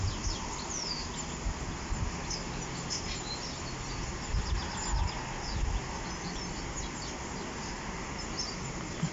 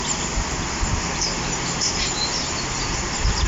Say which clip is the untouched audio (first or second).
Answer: first